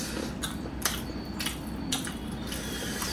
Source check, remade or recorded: remade